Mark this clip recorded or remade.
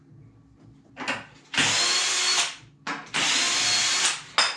recorded